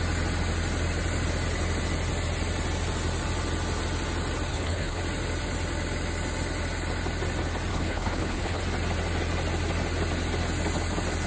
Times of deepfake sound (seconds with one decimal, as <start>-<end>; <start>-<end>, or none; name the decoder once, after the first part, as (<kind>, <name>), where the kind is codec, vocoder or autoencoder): 4.5-5.0 (codec, HILCodec); 7.7-8.6